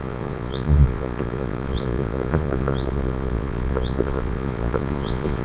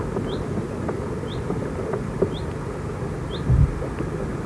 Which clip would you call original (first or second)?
second